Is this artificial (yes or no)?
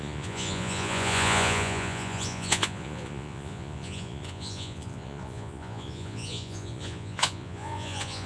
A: yes